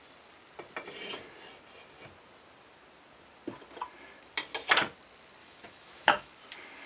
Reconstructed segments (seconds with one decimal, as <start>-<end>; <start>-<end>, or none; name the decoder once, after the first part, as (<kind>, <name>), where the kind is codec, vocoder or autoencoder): 5.4-6.3 (autoencoder, DAC-VAE)